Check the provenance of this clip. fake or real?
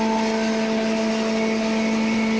real